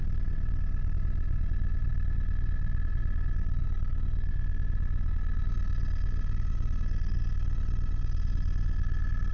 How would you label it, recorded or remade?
recorded